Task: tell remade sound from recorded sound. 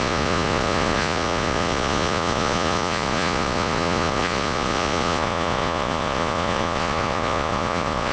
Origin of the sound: remade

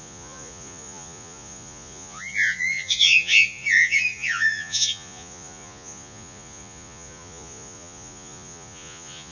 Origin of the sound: remade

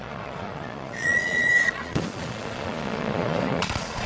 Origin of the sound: remade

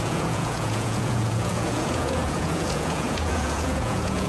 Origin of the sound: remade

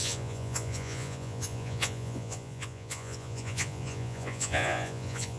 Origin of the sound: remade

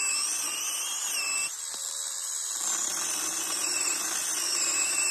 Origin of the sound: recorded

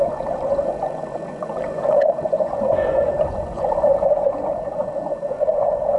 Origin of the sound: remade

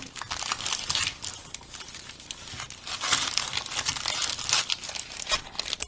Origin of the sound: recorded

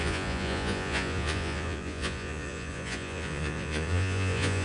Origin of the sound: remade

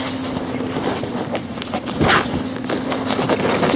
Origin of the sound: recorded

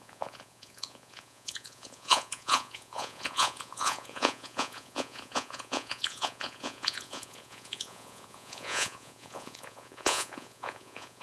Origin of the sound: remade